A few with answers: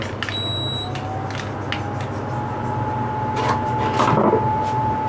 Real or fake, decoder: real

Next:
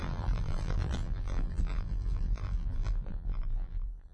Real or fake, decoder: fake, vocoder, BigVGAN v2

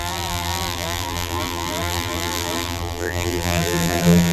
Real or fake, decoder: fake, vocoder, BigVGAN v2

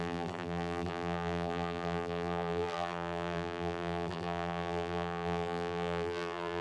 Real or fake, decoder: fake, vocoder, BigVGAN v2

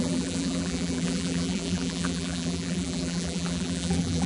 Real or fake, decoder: fake, vocoder, BigVGAN v2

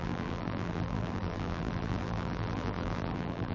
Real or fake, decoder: fake, vocoder, BigVGAN v2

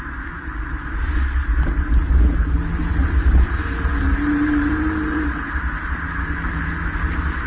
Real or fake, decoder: fake, vocoder, BigVGAN v2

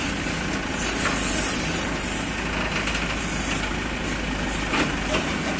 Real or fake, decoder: real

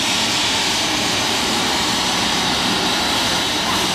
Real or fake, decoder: fake, vocoder, BigVGAN v2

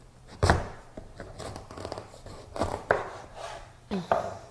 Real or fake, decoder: fake, vocoder, BigVGAN v2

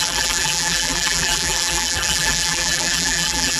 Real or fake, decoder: fake, vocoder, BigVGAN v2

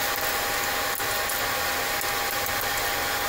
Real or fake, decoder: real